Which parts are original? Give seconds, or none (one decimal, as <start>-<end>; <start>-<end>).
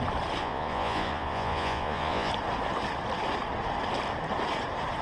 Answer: 0.0-0.4; 2.3-5.0